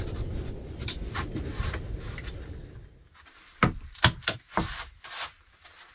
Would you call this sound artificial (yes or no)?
no